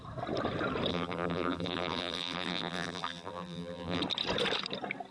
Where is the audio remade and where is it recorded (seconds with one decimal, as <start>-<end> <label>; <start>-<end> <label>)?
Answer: 0.0-0.9 recorded; 0.9-4.0 remade; 4.0-5.1 recorded